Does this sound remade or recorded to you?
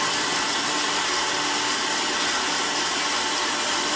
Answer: recorded